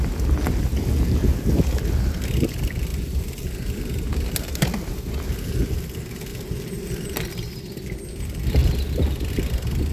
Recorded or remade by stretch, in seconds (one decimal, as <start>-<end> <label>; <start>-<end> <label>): 0.0-6.3 recorded; 6.3-7.3 remade; 7.3-9.9 recorded